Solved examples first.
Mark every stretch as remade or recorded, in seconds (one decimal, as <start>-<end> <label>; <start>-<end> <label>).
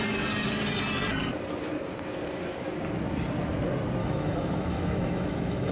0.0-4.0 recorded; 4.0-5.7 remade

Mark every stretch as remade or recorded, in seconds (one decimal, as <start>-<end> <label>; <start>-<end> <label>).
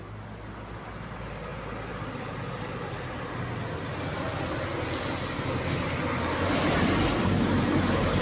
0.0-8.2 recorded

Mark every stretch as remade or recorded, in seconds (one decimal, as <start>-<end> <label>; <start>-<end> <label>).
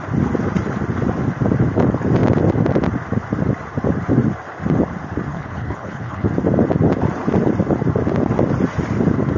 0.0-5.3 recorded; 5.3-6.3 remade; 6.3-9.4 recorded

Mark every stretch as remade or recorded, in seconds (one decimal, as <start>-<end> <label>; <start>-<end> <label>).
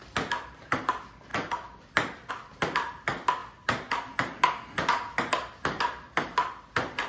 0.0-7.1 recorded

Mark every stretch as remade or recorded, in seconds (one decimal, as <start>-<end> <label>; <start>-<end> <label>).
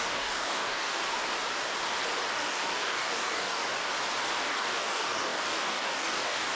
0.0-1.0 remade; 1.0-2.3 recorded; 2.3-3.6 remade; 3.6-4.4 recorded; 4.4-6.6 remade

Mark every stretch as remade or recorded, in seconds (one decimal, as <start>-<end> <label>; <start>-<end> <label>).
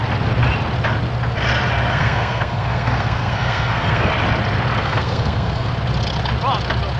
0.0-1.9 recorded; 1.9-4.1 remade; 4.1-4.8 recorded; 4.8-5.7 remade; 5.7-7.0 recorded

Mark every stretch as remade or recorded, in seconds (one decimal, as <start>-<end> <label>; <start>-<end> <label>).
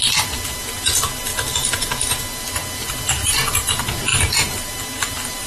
0.0-5.5 recorded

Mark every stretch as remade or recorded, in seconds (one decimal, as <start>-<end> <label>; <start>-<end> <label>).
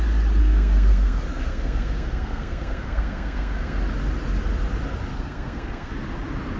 0.0-0.4 recorded; 0.4-3.8 remade; 3.8-5.1 recorded; 5.1-5.9 remade; 5.9-6.6 recorded